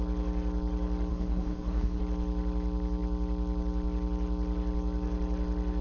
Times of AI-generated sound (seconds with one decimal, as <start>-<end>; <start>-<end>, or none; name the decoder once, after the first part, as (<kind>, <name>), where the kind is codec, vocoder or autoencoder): 1.1-2.0 (codec, HILCodec)